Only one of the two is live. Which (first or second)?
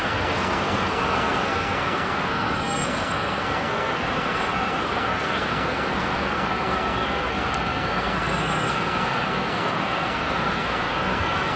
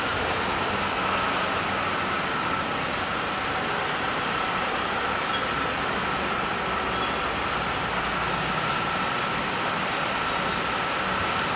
second